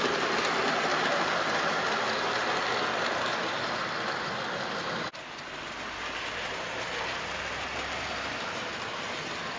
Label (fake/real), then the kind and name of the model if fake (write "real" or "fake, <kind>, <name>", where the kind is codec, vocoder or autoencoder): real